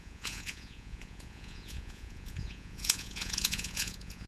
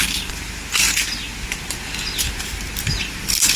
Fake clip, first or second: first